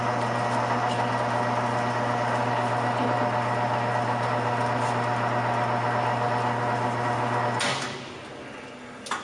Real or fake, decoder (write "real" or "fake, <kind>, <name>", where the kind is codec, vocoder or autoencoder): real